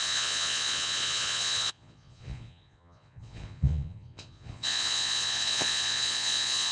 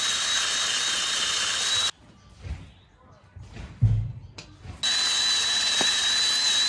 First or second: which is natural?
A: second